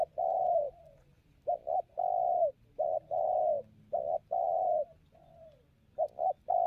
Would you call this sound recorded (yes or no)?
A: yes